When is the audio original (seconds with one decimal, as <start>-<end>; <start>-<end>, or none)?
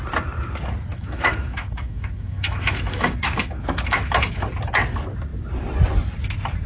0.0-0.9; 4.4-6.7